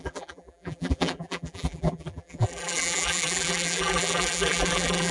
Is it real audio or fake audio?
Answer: fake